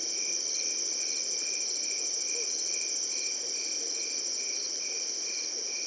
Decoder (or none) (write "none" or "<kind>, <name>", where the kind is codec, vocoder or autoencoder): none